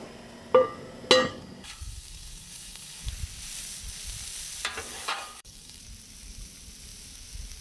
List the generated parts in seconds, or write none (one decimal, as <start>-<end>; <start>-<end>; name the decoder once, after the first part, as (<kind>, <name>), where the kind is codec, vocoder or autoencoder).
1.3-3.1 (codec, DAC); 4.9-5.8